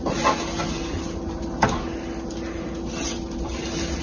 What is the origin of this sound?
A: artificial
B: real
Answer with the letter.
B